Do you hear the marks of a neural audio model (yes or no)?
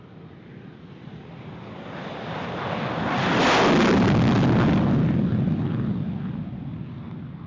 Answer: no